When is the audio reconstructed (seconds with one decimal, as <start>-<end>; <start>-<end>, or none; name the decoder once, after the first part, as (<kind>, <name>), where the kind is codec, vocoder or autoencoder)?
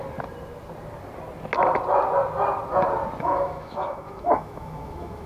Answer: 3.2-5.3 (autoencoder, DAC-VAE)